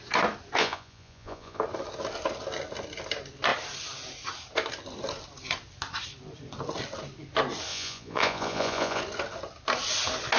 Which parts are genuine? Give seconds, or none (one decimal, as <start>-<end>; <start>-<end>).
0.0-0.6; 1.6-7.7; 9.0-10.4